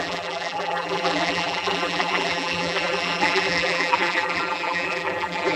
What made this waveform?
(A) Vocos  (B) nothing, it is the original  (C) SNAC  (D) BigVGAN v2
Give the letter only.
D